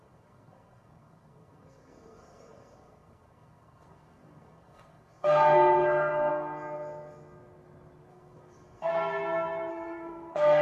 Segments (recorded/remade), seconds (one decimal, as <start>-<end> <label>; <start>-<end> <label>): 0.0-6.3 remade; 6.3-8.1 recorded; 8.1-8.9 remade; 8.9-9.7 recorded; 9.7-10.6 remade